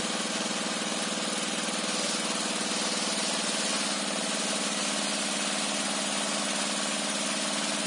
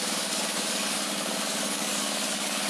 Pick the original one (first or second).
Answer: first